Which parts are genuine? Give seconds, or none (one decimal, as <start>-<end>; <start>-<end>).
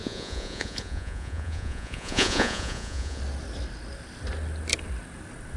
3.2-5.6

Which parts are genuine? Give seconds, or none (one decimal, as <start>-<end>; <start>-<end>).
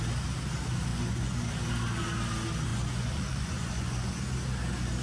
0.0-0.9; 1.5-2.7; 4.2-5.0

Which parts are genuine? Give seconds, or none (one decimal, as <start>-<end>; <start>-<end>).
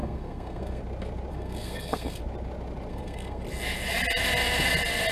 0.8-1.3; 2.2-2.9; 3.4-5.1